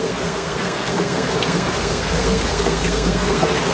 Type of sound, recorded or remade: remade